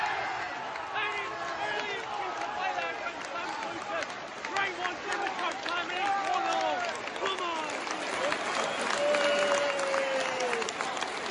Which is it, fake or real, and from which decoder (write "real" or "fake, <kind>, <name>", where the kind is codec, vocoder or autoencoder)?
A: real